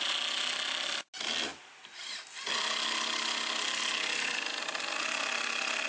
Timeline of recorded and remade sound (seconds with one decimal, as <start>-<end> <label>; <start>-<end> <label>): 0.0-5.9 recorded